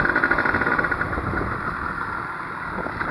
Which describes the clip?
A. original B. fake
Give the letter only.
A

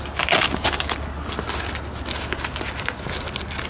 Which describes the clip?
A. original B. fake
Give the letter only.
A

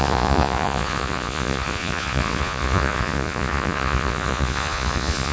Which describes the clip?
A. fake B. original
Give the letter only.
A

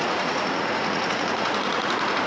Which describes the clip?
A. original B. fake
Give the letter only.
B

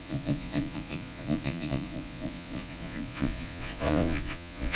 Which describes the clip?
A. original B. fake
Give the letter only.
B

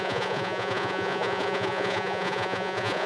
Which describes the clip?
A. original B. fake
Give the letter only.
B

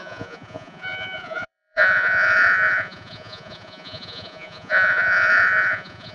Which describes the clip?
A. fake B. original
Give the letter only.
A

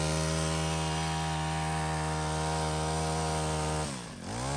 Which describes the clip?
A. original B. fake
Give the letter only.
A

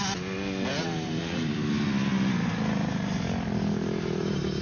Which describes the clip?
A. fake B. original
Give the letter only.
B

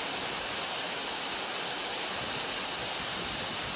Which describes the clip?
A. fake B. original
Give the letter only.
B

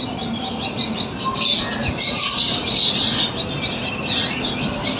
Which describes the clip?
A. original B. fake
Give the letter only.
A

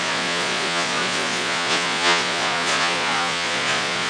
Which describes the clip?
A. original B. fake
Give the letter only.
B